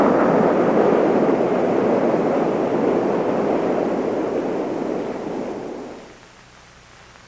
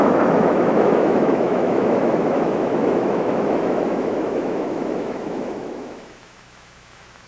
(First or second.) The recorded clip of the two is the first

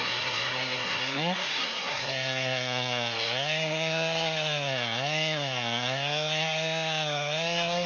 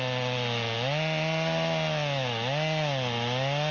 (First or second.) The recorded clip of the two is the second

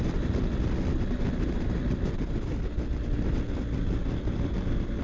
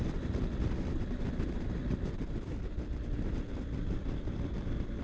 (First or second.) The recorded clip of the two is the first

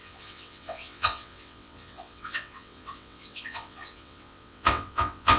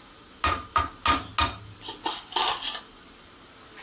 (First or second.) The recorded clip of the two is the second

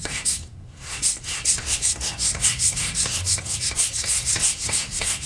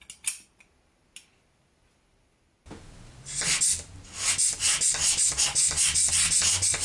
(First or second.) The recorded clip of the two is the second